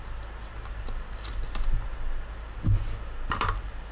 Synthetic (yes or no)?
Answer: no